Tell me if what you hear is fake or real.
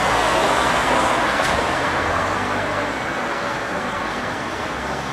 fake